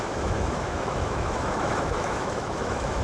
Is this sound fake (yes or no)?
yes